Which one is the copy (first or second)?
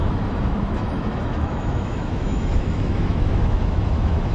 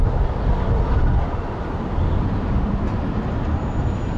first